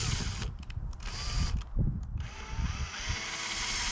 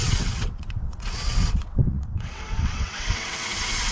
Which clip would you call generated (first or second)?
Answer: second